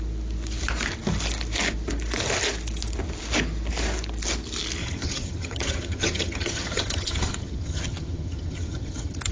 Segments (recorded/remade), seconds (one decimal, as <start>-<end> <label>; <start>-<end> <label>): 0.0-4.8 recorded; 4.8-9.3 remade